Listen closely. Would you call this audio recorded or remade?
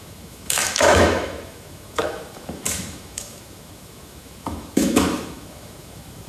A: remade